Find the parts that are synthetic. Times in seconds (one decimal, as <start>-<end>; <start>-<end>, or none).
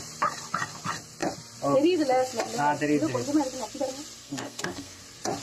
4.2-5.0